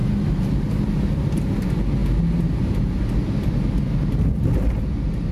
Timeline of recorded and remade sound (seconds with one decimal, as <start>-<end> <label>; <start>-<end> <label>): 0.0-5.3 recorded